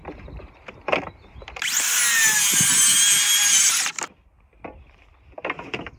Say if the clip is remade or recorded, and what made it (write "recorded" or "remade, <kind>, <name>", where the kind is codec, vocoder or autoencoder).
recorded